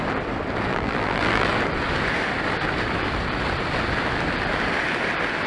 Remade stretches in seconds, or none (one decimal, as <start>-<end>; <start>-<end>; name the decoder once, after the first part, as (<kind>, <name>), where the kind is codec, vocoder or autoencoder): 0.7-1.5 (vocoder, BigVGAN v2)